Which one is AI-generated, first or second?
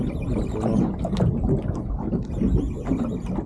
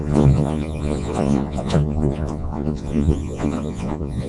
second